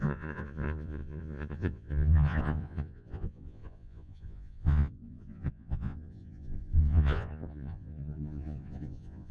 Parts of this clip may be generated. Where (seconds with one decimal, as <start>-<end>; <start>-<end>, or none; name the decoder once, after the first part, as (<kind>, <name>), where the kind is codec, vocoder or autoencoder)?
0.0-9.3 (vocoder, Vocos)